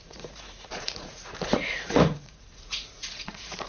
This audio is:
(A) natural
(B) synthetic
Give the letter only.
B